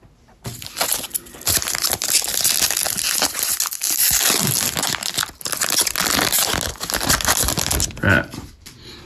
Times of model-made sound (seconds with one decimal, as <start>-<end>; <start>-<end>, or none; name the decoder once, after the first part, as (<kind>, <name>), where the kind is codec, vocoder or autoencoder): none